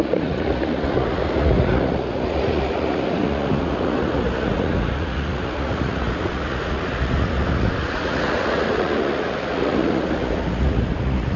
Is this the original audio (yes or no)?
no